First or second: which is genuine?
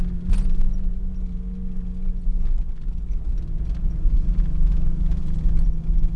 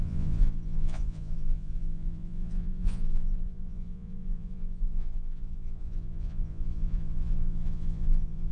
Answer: first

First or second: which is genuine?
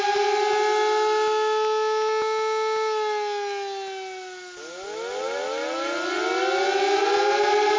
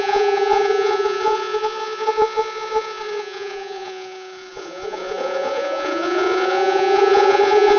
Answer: first